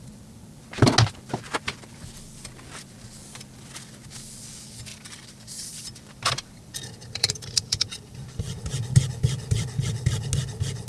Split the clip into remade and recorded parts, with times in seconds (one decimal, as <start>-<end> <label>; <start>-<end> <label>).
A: 0.0-4.9 recorded; 4.9-8.6 remade; 8.6-10.9 recorded